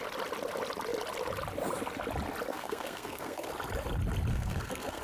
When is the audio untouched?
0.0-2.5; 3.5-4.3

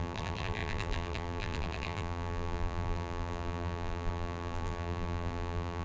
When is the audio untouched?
none

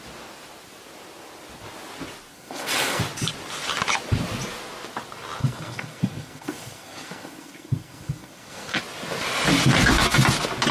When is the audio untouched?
0.0-2.3; 3.0-5.4; 8.8-10.7

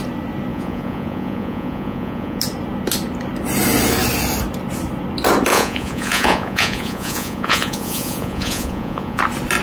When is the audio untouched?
0.0-0.5; 2.4-5.5; 9.2-9.6